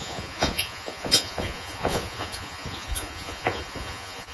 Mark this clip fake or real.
fake